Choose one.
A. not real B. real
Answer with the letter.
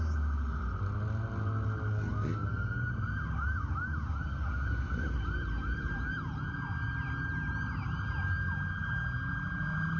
B